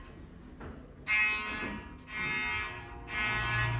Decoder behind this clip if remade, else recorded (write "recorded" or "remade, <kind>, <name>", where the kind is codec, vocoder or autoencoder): recorded